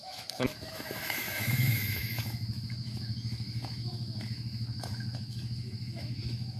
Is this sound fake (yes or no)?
yes